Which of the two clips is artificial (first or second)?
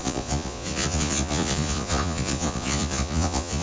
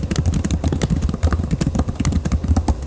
first